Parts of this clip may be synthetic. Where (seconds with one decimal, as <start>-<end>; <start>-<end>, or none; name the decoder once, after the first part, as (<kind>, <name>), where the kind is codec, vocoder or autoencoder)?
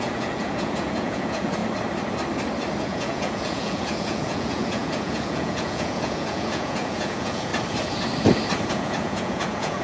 0.0-1.6 (vocoder, Vocos); 2.8-7.5; 8.7-9.8